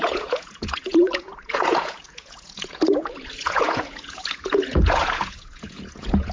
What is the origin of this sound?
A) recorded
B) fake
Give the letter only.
B